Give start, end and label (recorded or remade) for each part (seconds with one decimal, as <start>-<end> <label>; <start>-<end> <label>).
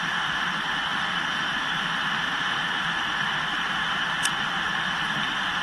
0.0-0.9 recorded; 0.9-2.1 remade; 2.1-5.6 recorded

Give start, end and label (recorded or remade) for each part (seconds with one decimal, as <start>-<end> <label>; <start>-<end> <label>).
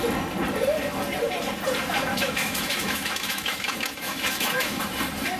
0.0-2.1 recorded; 2.1-4.8 remade; 4.8-5.4 recorded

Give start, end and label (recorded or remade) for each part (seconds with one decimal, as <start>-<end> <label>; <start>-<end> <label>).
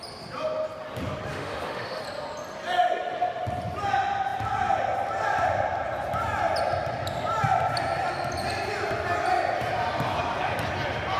0.0-1.3 recorded; 1.3-2.0 remade; 2.0-11.2 recorded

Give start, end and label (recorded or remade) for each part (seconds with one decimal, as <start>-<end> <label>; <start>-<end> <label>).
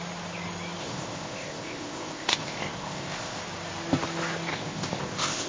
0.0-0.8 recorded; 0.8-3.4 remade; 3.4-4.5 recorded; 4.5-5.5 remade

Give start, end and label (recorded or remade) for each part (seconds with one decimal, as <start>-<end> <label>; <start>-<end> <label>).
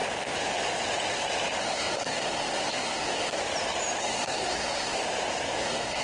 0.0-1.6 recorded; 1.6-3.4 remade; 3.4-4.0 recorded; 4.0-5.0 remade; 5.0-5.6 recorded; 5.6-6.0 remade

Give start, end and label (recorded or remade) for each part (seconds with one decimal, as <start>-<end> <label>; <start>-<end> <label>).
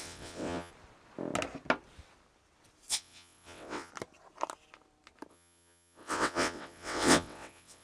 0.0-0.7 remade; 0.7-2.9 recorded; 2.9-3.9 remade; 3.9-5.3 recorded; 5.3-7.8 remade